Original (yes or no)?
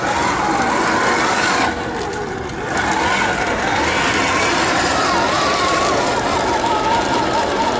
yes